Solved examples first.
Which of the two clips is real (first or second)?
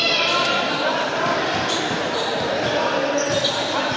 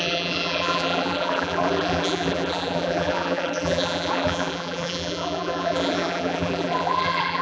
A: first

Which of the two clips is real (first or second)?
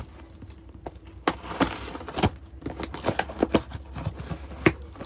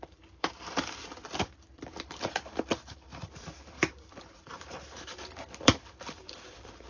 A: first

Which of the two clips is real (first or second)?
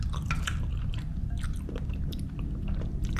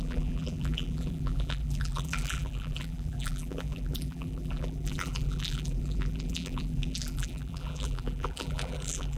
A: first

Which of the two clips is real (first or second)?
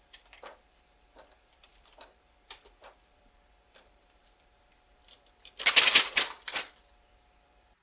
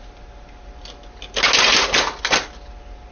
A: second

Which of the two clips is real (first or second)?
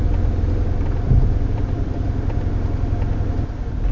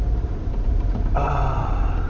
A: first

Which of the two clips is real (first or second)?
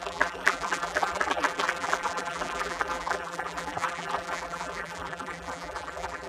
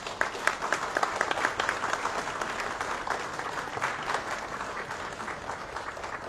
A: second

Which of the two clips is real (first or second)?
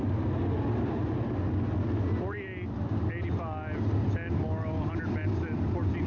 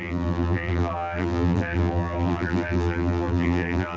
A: first